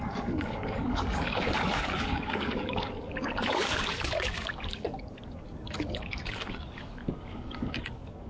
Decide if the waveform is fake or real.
fake